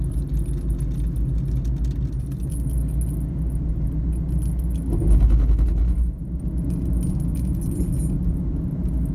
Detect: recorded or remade recorded